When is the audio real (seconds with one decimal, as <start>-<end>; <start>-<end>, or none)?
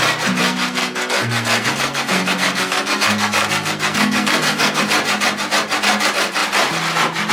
0.0-0.4; 4.8-7.3